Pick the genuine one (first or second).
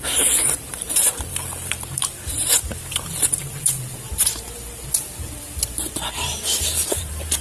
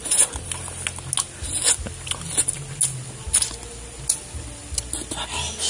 second